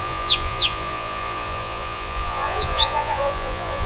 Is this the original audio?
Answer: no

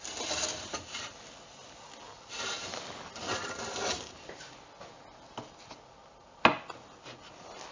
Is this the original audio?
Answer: yes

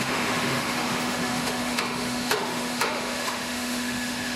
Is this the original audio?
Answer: no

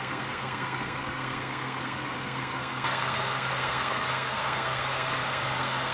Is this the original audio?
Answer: no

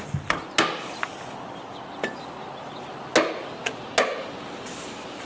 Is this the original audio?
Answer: yes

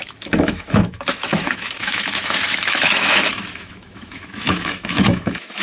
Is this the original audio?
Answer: no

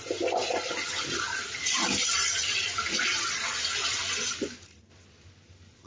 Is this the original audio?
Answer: yes